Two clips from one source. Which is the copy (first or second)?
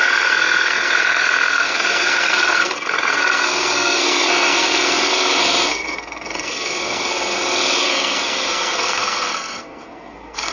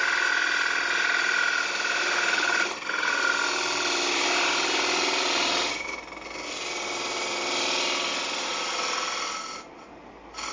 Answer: first